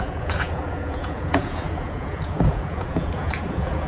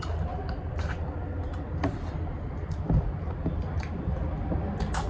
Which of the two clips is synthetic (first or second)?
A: first